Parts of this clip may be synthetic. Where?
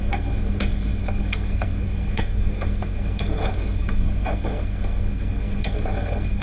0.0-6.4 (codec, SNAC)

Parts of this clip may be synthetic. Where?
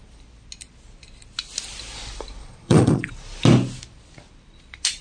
2.4-3.1 (vocoder, Vocos)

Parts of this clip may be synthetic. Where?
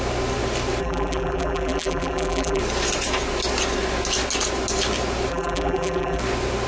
0.8-2.6 (vocoder, BigVGAN v2); 5.3-6.2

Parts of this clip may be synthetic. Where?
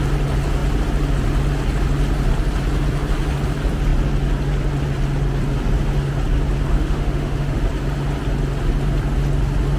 6.7-7.6 (autoencoder, DAC-VAE)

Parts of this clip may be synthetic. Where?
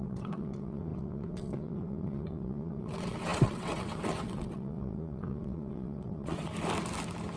0.0-6.5 (vocoder, WaveNeXt)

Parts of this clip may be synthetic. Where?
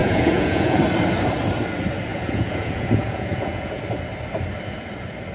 0.0-0.8 (vocoder, Vocos); 2.1-3.8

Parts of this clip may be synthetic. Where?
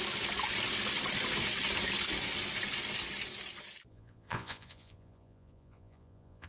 3.9-6.5 (vocoder, Vocos)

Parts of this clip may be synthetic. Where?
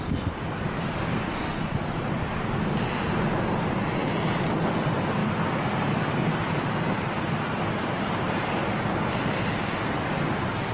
0.0-5.2 (vocoder, BigVGAN v2); 6.1-10.7